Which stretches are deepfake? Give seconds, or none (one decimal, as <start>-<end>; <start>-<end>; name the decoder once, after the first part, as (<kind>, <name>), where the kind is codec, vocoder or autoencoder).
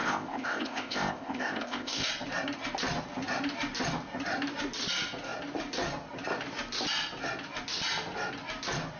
0.0-2.1 (codec, ZipCodec)